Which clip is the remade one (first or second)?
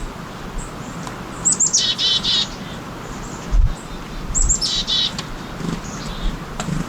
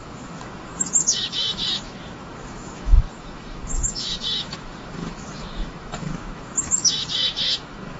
second